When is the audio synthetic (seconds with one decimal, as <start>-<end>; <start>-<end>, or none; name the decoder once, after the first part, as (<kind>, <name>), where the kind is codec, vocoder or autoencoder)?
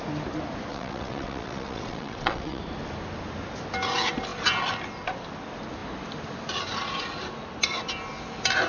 0.7-2.6 (vocoder, WaveNeXt)